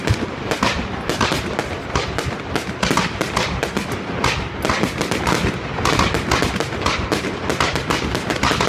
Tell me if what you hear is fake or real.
real